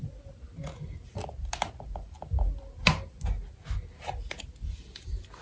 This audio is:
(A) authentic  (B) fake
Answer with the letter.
A